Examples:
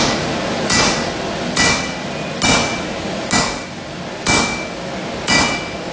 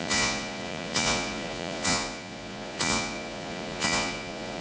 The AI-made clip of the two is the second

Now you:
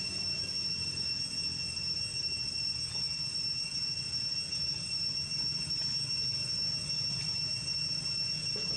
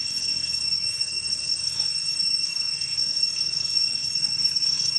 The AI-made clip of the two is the second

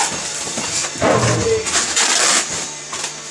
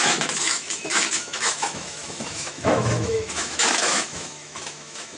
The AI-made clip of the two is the second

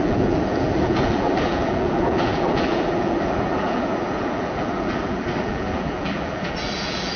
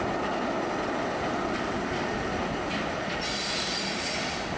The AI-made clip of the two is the first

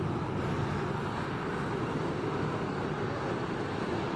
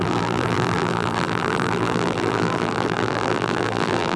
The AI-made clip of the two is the second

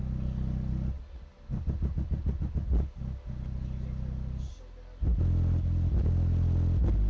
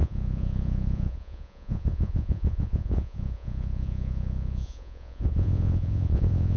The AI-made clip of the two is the second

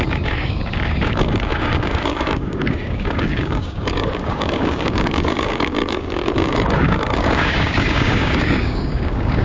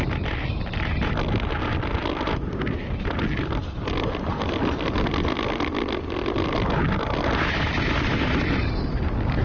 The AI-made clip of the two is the first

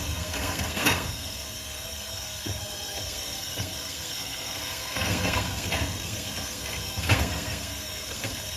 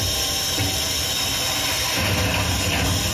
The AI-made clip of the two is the first